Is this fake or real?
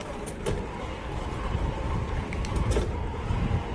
real